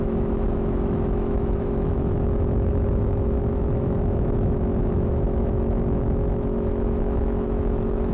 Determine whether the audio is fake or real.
fake